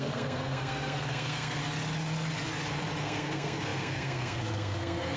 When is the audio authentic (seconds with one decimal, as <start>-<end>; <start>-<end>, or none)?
1.6-3.0